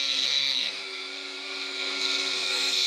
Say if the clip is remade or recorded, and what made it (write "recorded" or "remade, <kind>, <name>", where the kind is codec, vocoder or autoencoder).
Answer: remade, codec, SNAC